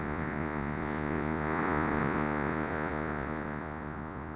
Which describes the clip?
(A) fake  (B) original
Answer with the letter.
A